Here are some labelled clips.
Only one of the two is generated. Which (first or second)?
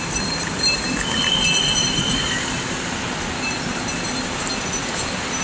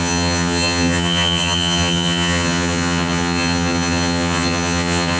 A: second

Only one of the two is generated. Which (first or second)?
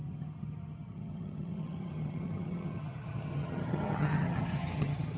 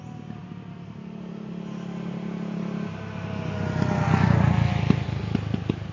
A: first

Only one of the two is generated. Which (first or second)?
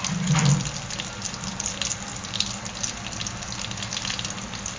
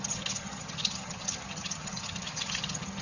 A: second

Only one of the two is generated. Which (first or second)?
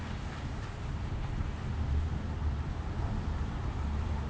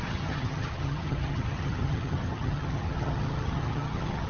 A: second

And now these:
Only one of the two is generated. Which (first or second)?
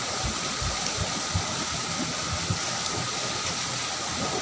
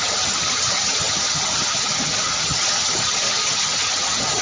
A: second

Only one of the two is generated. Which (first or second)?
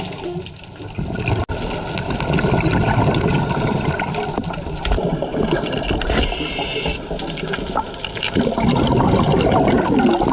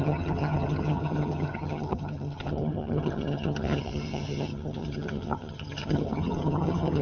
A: second